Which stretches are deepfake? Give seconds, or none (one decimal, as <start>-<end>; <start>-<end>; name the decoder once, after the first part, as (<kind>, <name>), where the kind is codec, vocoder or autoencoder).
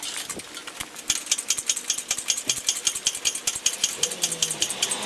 none